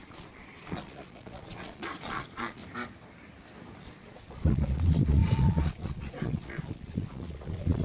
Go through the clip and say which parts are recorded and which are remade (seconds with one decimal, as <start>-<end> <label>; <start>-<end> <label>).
0.0-2.6 remade; 2.6-3.8 recorded; 3.8-7.8 remade